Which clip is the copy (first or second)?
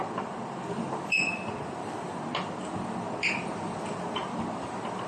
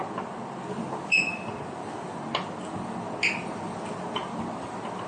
first